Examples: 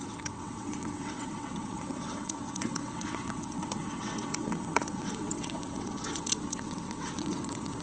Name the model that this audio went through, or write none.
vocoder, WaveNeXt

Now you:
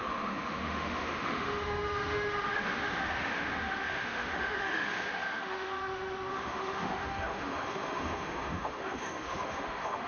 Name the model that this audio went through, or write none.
autoencoder, DAC-VAE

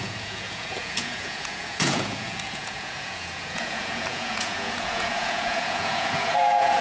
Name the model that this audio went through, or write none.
vocoder, Vocos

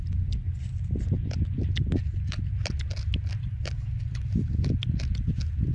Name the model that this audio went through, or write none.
none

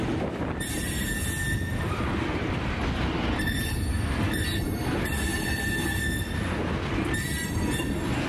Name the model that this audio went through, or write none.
none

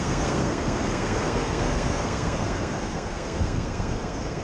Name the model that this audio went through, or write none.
codec, SNAC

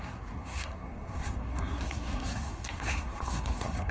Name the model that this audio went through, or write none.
codec, SNAC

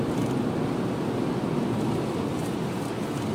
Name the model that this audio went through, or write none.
none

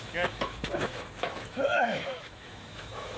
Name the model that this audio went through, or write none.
autoencoder, DAC-VAE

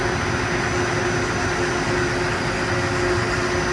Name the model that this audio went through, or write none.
none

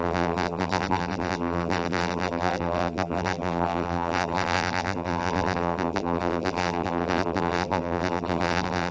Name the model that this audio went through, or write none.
vocoder, BigVGAN v2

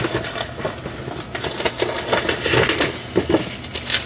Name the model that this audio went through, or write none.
none